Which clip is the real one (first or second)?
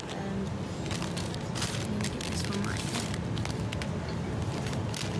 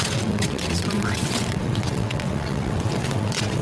first